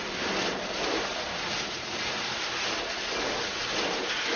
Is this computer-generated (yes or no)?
no